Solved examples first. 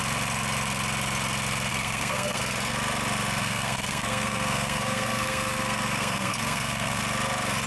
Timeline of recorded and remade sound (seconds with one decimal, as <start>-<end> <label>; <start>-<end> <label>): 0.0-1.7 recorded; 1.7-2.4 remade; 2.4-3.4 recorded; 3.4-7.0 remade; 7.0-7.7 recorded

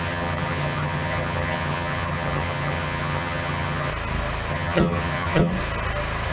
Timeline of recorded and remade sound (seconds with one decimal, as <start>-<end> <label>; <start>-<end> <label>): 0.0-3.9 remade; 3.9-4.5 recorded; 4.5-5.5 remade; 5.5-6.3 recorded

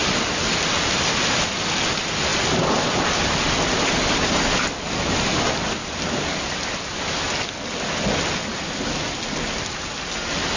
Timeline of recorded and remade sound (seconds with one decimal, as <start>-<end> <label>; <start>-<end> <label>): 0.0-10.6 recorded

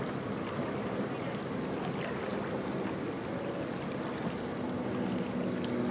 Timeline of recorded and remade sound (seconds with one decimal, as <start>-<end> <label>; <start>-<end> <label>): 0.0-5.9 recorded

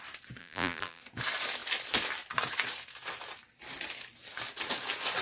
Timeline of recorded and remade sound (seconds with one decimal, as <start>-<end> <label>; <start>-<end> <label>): 0.0-0.4 recorded; 0.4-1.0 remade; 1.0-5.2 recorded

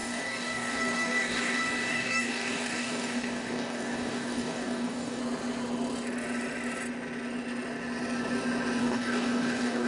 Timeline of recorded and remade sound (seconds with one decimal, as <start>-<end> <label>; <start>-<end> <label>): 0.0-5.2 remade; 5.2-8.8 recorded; 8.8-9.9 remade

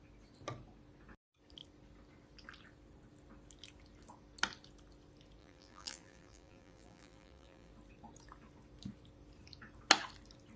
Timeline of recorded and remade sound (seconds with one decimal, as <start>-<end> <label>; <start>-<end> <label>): 0.0-5.4 recorded; 5.4-7.7 remade; 7.7-10.6 recorded